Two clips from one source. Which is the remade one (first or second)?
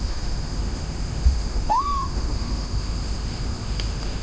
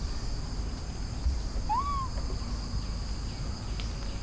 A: first